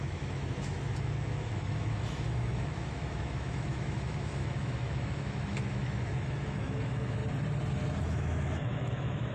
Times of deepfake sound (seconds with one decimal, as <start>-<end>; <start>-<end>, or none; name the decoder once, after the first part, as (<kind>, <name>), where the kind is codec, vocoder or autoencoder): 0.0-7.2 (autoencoder, DAC-VAE); 8.0-9.3